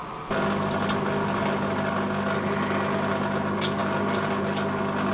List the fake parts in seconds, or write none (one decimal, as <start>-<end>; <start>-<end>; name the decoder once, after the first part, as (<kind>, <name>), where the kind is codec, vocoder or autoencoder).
none